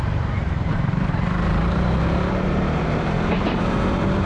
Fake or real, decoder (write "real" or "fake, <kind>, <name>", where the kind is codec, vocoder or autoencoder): fake, vocoder, BigVGAN v2